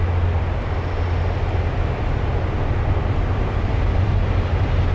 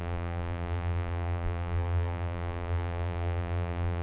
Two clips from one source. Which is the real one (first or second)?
first